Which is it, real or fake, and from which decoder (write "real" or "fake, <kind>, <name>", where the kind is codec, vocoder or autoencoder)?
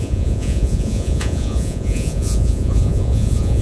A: fake, vocoder, Vocos